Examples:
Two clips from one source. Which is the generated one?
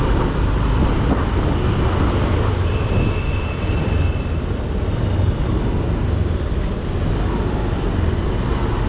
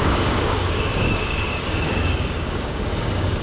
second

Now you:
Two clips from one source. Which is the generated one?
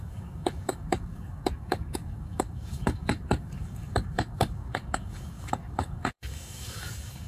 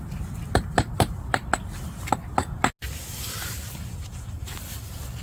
first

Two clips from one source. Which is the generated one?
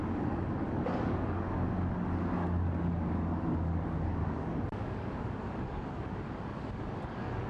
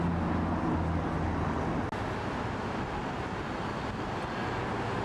first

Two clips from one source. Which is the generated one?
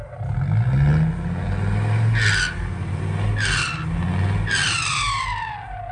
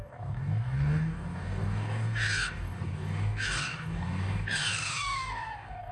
second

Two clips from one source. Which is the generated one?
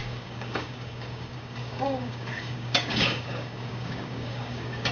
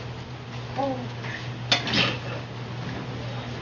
first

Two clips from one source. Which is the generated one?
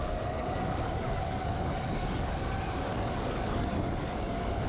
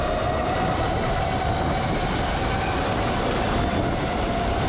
first